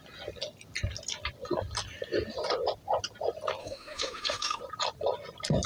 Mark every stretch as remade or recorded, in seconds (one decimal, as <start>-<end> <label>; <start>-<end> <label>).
0.0-3.6 recorded; 3.6-4.6 remade; 4.6-5.7 recorded